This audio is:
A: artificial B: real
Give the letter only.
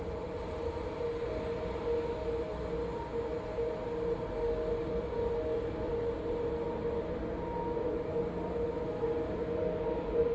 B